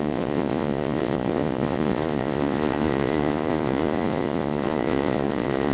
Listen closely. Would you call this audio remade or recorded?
remade